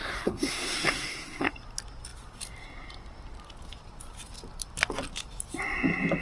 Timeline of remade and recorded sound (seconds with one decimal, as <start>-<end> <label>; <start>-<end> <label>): 0.0-1.5 remade; 1.5-6.2 recorded